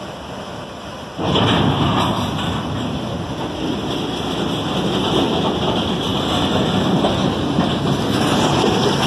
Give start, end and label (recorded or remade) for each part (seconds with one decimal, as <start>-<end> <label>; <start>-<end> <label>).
0.0-9.1 recorded